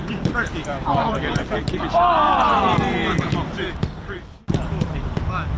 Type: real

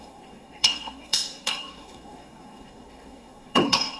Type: fake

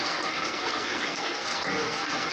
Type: fake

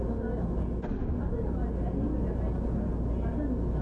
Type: real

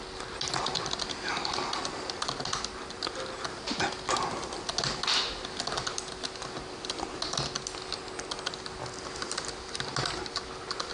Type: real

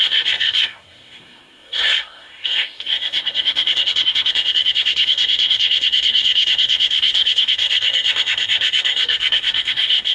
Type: fake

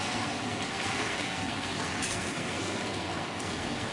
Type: fake